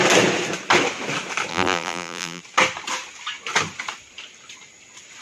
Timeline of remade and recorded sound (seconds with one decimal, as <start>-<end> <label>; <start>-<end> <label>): 0.0-1.5 recorded; 1.5-2.4 remade; 2.4-5.2 recorded